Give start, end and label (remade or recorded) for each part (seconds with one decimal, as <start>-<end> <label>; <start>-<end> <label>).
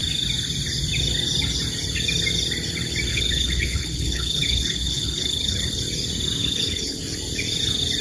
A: 0.0-3.1 recorded; 3.1-5.8 remade; 5.8-6.4 recorded; 6.4-7.0 remade; 7.0-8.0 recorded